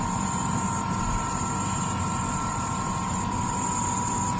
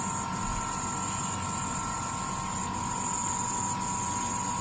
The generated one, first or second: first